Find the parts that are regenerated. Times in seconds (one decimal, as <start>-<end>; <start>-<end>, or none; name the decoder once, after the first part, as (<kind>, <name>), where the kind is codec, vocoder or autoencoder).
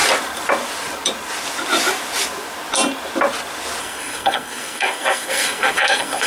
3.8-6.3 (codec, SNAC)